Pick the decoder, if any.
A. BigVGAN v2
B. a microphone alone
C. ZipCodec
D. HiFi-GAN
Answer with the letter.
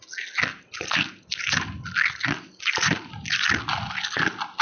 B